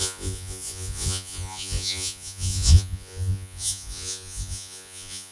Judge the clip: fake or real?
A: fake